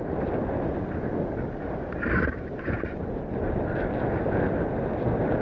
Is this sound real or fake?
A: real